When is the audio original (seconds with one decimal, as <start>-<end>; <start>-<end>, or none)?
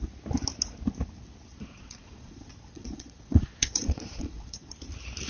0.0-1.5; 4.7-5.3